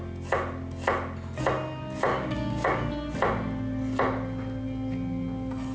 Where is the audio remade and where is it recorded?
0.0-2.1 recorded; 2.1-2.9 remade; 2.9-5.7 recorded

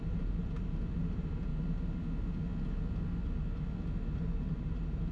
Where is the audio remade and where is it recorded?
0.0-1.5 remade; 1.5-4.6 recorded; 4.6-5.1 remade

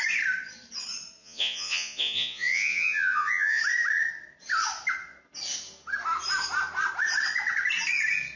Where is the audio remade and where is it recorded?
0.0-1.2 recorded; 1.2-3.6 remade; 3.6-8.4 recorded

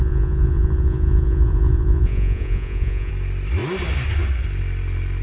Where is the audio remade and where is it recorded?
0.0-3.1 remade; 3.1-5.2 recorded

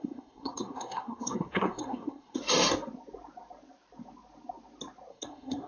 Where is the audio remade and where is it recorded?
0.0-2.4 remade; 2.4-5.1 recorded; 5.1-5.7 remade

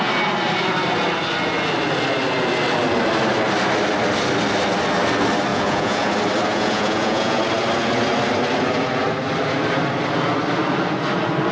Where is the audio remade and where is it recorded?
0.0-5.5 recorded; 5.5-6.1 remade; 6.1-6.5 recorded; 6.5-7.4 remade; 7.4-11.5 recorded

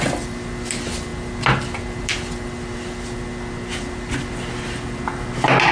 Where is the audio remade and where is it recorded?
0.0-5.7 recorded

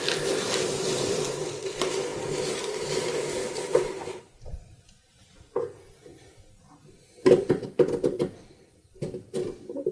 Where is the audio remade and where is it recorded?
0.0-2.1 recorded; 2.1-5.6 remade; 5.6-9.9 recorded